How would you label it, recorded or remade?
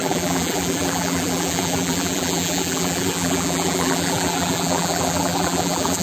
remade